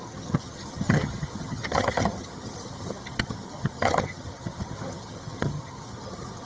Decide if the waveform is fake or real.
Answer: fake